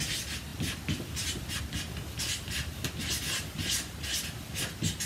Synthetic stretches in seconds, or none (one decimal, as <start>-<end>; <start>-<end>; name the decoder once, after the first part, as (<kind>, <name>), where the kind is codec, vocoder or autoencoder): none